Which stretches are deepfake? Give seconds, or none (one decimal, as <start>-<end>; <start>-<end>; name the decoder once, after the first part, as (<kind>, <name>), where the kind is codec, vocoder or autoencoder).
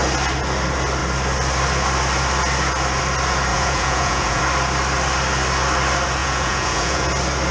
3.5-4.4 (vocoder, Vocos); 6.2-7.1